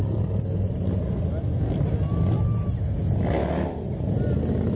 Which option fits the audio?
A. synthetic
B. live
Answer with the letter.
B